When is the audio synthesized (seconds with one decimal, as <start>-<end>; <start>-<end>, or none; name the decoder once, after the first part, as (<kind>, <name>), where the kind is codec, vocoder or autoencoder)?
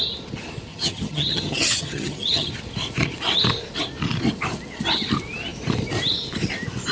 0.7-2.5 (vocoder, HiFi-GAN)